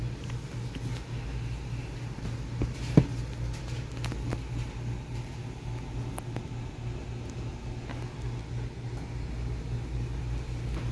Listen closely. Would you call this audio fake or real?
real